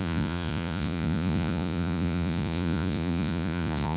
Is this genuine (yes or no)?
no